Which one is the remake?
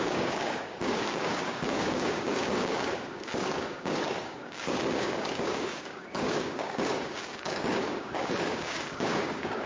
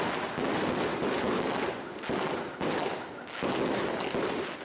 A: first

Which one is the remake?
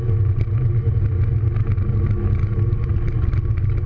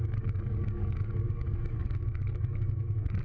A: second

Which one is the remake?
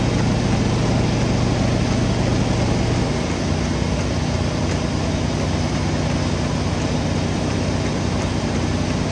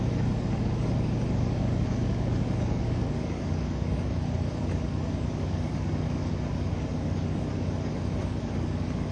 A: second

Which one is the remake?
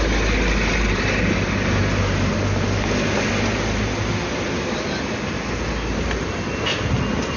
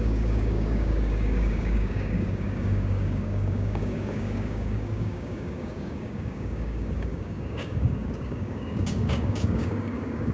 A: second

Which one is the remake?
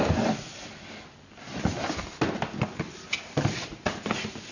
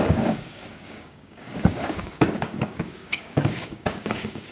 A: second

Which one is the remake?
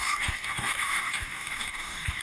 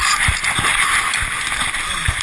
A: first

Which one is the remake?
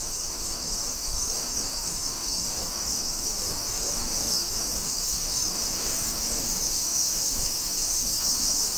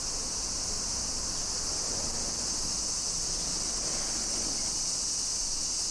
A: first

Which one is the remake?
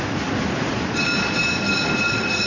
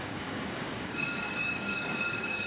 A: second